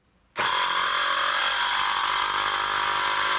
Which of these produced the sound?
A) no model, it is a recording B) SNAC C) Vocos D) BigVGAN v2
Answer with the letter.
A